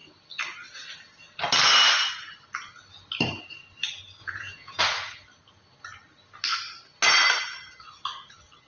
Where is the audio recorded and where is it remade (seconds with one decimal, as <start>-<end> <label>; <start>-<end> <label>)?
0.0-4.2 recorded; 4.2-4.8 remade; 4.8-8.7 recorded